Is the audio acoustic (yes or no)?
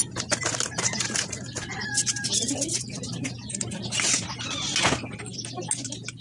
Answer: yes